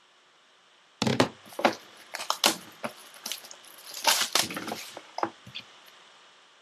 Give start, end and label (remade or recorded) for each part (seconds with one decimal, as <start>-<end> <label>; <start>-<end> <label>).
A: 0.0-1.1 recorded; 1.1-2.2 remade; 2.2-3.0 recorded; 3.0-6.6 remade